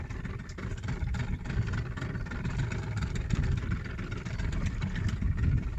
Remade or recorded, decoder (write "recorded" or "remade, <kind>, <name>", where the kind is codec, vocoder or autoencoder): recorded